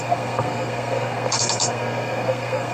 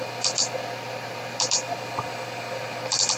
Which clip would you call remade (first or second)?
first